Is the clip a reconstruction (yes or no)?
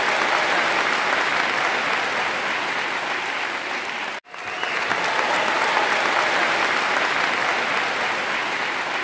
no